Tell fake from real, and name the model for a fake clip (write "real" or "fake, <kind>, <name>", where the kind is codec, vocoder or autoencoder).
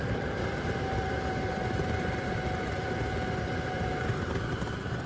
fake, vocoder, BigVGAN v2